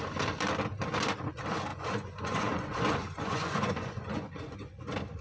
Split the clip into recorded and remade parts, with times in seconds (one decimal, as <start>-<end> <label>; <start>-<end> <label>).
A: 0.0-1.7 recorded; 1.7-4.8 remade; 4.8-5.2 recorded